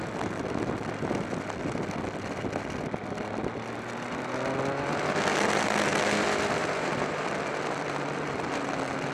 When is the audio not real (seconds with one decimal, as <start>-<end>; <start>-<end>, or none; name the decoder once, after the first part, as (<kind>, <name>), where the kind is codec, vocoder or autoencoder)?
6.6-8.7 (vocoder, BigVGAN v2)